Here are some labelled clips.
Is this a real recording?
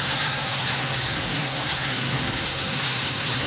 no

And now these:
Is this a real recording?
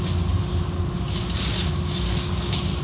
yes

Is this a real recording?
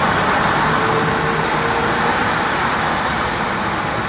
yes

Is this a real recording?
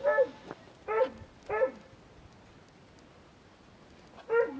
yes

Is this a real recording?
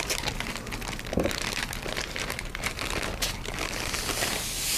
yes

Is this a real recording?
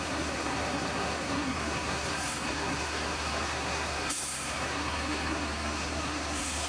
no